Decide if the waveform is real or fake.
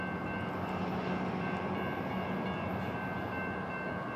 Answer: real